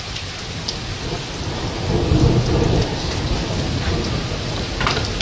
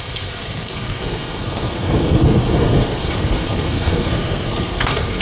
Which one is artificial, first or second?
second